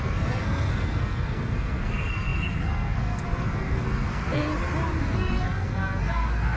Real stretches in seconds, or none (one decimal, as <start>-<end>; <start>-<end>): 4.5-5.0